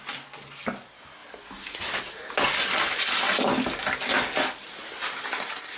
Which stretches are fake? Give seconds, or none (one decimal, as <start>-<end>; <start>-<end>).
none

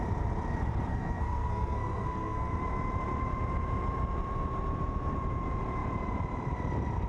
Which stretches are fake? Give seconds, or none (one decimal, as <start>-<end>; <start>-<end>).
0.9-2.5